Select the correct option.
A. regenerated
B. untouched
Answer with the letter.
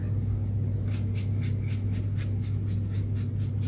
B